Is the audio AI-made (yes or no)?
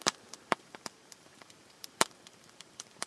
yes